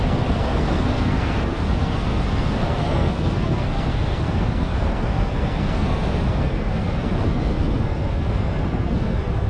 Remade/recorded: remade